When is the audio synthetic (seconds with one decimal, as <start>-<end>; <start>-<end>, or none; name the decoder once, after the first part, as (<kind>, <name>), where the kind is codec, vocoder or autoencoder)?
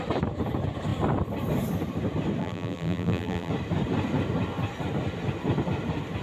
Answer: 2.4-3.5 (vocoder, BigVGAN v2)